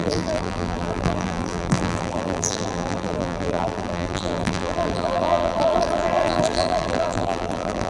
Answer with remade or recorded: remade